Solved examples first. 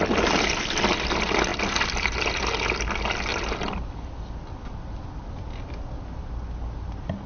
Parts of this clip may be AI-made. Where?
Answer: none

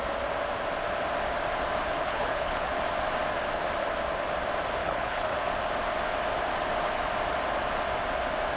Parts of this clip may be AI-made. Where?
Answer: 2.0-2.7 (codec, HILCodec); 4.8-5.5

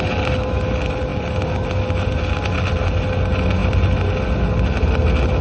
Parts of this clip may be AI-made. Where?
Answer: none